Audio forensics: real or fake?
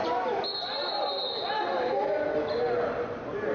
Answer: real